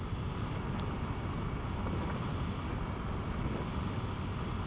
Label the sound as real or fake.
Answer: real